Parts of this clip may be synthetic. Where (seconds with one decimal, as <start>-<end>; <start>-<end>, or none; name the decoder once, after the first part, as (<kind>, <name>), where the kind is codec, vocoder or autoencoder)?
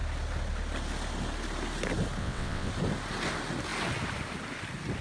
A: 2.2-2.7 (vocoder, WaveNeXt)